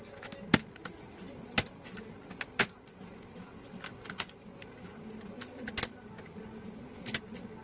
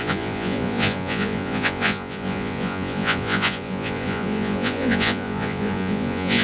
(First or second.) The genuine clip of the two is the first